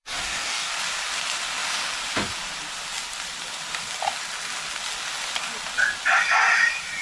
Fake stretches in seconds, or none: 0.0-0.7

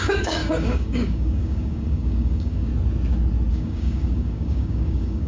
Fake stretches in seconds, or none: 0.0-2.7; 3.5-5.3

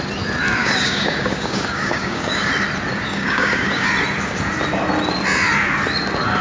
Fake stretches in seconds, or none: 0.6-2.5; 2.9-3.9